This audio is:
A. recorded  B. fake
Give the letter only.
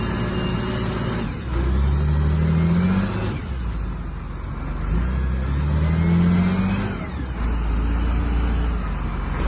A